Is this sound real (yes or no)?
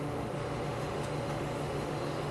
no